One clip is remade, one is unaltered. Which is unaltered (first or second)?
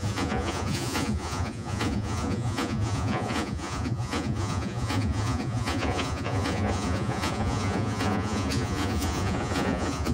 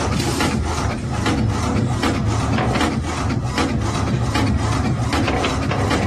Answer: second